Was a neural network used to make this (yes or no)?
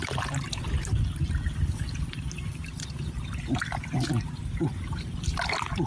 no